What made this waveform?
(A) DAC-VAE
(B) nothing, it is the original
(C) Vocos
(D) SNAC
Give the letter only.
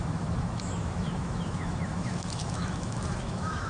A